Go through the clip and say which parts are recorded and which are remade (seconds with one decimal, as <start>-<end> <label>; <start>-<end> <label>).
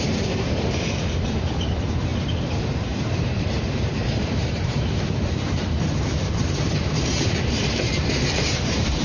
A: 0.0-2.1 remade; 2.1-2.7 recorded; 2.7-9.0 remade